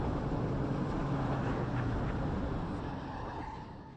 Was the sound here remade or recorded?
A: recorded